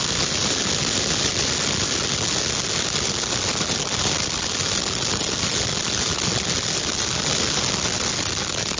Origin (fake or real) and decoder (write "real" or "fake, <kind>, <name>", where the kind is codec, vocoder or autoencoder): real